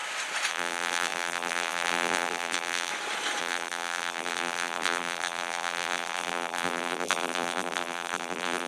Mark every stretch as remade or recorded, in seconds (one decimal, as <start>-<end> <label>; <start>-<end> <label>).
0.0-0.5 recorded; 0.5-2.9 remade; 2.9-3.4 recorded; 3.4-8.7 remade